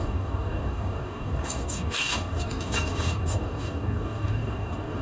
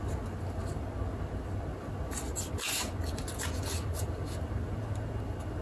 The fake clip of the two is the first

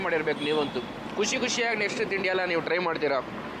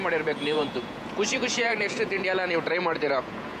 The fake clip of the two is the second